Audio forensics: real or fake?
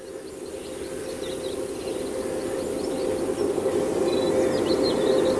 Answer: real